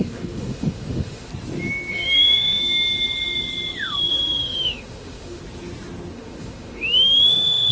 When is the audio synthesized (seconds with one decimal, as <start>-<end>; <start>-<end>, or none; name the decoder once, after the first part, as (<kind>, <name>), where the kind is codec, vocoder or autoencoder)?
0.0-1.3 (autoencoder, DAC-VAE); 1.9-2.6; 4.1-5.4; 6.1-7.7